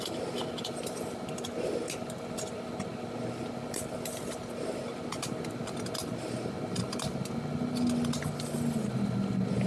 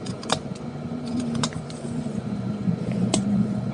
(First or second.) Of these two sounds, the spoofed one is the second